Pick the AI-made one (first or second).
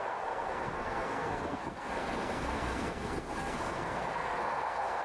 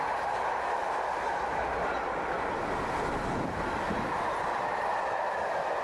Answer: first